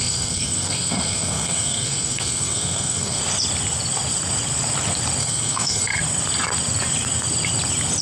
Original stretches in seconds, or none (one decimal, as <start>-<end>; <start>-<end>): 3.2-5.2; 5.9-8.0